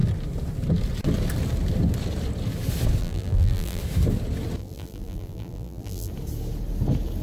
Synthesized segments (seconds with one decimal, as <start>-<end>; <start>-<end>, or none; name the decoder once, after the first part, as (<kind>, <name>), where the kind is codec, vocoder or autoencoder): 3.0-3.8 (vocoder, BigVGAN v2); 4.6-6.1